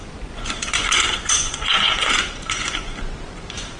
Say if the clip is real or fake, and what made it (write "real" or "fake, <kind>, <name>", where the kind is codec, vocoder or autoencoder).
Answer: fake, vocoder, Vocos